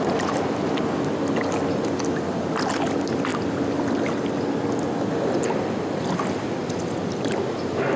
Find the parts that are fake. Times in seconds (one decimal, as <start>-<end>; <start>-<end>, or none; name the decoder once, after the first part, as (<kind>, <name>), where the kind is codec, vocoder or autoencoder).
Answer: none